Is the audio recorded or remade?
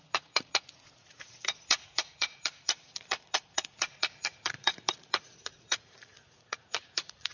remade